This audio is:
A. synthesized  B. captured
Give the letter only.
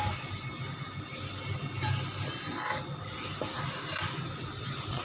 B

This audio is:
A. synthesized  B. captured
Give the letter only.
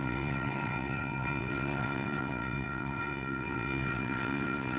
A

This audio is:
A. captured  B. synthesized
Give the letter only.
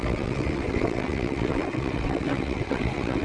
B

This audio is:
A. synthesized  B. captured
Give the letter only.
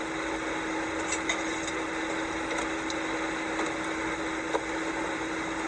B